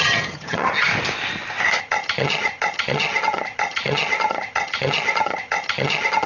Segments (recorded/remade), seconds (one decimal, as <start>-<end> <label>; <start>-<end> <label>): 0.0-0.9 remade; 0.9-1.8 recorded; 1.8-6.3 remade